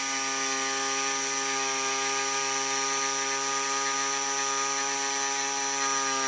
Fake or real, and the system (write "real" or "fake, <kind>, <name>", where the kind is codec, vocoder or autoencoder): real